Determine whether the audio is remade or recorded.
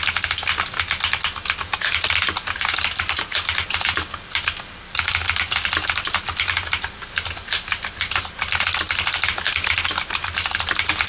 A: recorded